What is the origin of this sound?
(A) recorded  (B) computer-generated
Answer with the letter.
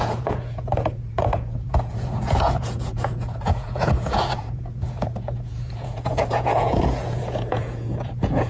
B